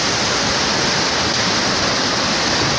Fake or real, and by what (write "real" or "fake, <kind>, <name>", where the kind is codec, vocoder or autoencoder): real